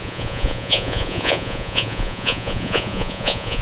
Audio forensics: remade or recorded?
remade